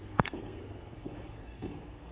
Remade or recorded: remade